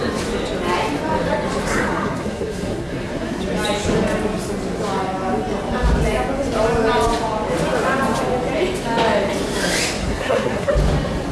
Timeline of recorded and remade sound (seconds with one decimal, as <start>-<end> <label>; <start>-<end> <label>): 0.0-1.6 recorded; 1.6-3.4 remade; 3.4-10.0 recorded; 10.0-10.7 remade; 10.7-11.3 recorded